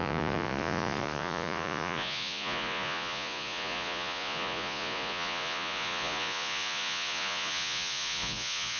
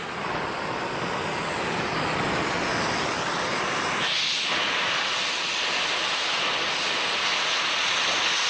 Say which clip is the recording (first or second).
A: second